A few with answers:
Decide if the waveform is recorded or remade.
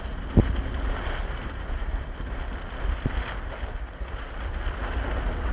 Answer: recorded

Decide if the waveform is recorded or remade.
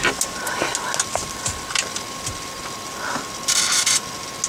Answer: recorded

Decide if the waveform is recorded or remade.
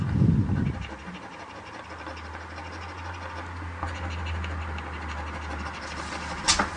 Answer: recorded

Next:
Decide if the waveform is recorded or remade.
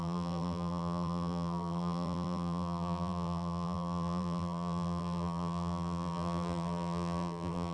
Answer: remade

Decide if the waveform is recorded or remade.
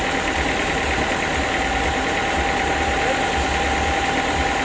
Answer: recorded